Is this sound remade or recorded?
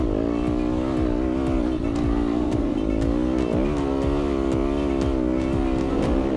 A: recorded